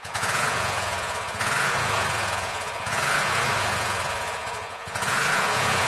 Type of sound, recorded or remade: remade